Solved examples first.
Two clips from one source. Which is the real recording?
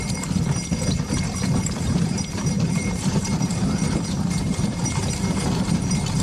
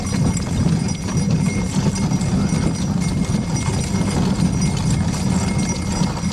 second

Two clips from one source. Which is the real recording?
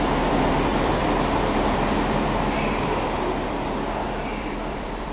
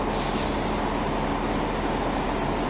second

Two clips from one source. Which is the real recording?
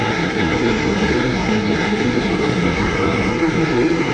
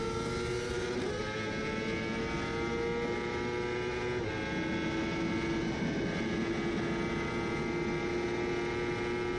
second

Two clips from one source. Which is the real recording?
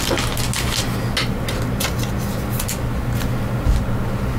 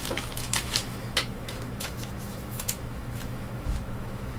first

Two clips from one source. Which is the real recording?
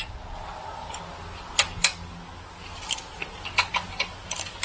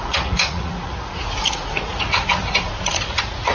first